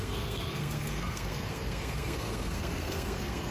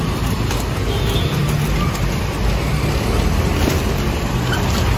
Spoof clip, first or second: first